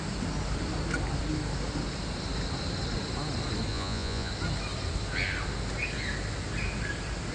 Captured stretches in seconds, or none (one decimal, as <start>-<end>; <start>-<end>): 0.0-3.7; 4.3-7.3